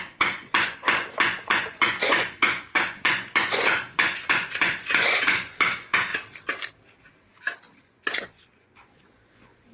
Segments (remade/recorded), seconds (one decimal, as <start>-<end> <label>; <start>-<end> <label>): 0.0-6.1 remade; 6.1-7.8 recorded; 7.8-9.7 remade